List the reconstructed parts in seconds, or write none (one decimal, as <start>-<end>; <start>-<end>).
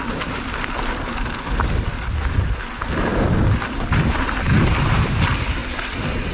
3.1-4.4